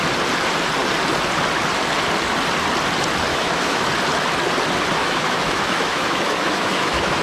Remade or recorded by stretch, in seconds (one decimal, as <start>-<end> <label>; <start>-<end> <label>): 0.0-3.3 recorded; 3.3-3.9 remade; 3.9-5.0 recorded; 5.0-7.2 remade